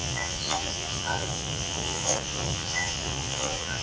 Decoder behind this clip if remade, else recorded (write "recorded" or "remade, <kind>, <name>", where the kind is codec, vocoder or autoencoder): remade, vocoder, Vocos